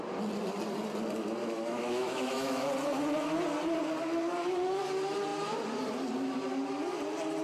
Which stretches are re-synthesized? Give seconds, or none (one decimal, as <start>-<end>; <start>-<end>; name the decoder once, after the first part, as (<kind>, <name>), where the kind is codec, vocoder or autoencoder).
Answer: 1.4-2.7 (autoencoder, DAC-VAE)